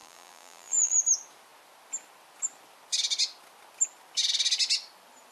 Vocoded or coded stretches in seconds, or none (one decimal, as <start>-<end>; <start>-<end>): 0.0-1.0